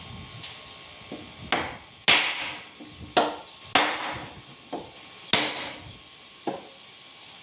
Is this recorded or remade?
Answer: recorded